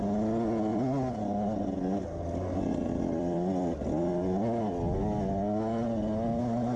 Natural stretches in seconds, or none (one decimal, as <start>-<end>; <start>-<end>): 0.0-2.8; 3.8-6.8